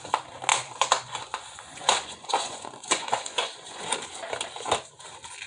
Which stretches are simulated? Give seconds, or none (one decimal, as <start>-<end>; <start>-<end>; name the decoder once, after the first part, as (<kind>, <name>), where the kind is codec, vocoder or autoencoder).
0.5-3.8 (vocoder, Vocos)